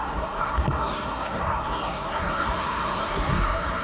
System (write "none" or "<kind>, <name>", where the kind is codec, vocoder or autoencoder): codec, SNAC